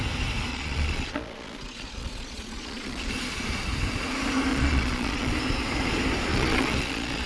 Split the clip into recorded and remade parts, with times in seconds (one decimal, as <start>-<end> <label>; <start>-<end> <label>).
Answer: 0.0-0.5 recorded; 0.5-3.1 remade; 3.1-4.5 recorded; 4.5-5.3 remade; 5.3-6.3 recorded; 6.3-7.3 remade

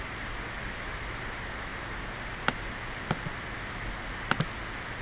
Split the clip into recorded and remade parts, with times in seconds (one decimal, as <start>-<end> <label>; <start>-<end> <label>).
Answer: 0.0-5.0 recorded